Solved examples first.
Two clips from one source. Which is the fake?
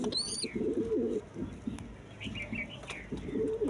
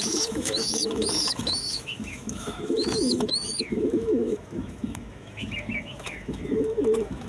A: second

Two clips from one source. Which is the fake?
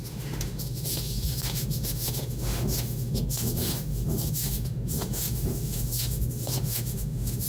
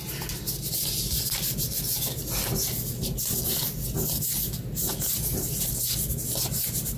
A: first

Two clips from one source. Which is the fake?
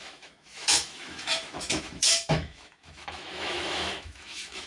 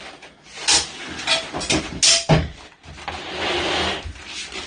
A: first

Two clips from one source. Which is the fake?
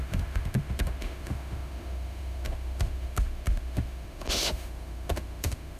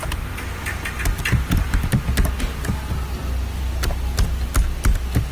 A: first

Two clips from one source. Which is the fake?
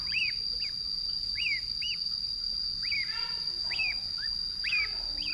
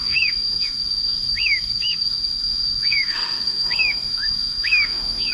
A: second